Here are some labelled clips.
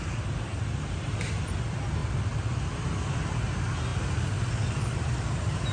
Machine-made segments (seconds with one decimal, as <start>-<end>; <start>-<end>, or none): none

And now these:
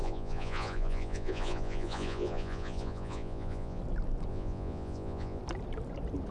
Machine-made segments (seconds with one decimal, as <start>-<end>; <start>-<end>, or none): 0.0-3.8; 4.3-5.4

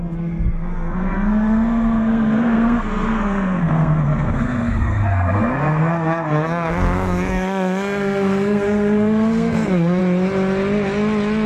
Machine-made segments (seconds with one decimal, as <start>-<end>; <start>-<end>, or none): 0.0-10.0